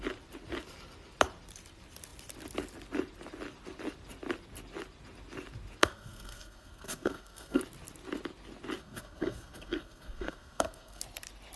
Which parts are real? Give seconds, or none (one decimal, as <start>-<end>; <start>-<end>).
0.0-5.8; 7.6-8.8; 11.0-11.6